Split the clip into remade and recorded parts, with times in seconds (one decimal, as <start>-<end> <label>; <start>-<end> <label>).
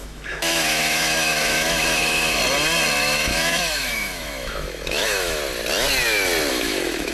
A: 0.0-2.4 remade; 2.4-3.0 recorded; 3.0-5.4 remade; 5.4-6.5 recorded; 6.5-7.1 remade